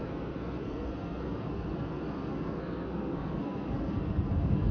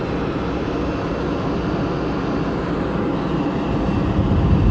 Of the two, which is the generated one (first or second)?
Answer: first